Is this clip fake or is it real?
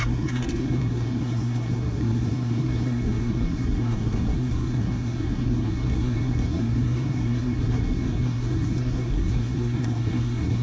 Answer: fake